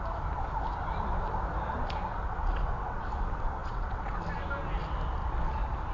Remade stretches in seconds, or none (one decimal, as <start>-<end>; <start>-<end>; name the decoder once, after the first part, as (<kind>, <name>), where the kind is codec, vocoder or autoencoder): 2.1-3.1 (vocoder, WaveNeXt); 3.6-4.2